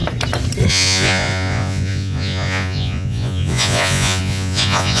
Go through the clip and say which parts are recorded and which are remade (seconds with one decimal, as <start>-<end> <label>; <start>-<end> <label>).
0.0-0.7 recorded; 0.7-5.0 remade